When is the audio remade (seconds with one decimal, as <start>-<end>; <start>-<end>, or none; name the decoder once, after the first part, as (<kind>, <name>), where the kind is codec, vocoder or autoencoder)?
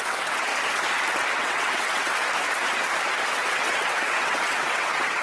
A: 0.0-0.5 (vocoder, WaveNeXt); 1.3-2.1; 3.3-5.2